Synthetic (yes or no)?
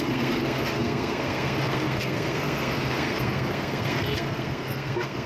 yes